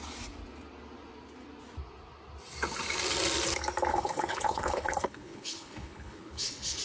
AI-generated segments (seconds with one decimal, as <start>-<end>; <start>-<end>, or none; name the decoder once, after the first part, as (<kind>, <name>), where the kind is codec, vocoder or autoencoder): 3.9-6.8 (codec, HILCodec)